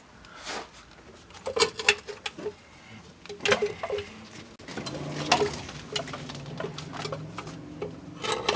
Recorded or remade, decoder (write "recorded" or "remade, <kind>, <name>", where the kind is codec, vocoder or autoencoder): recorded